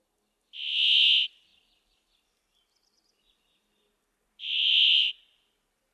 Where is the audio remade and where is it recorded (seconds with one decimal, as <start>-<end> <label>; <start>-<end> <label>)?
0.0-1.5 recorded; 1.5-5.0 remade; 5.0-5.9 recorded